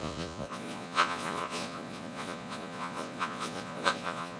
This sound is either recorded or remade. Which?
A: remade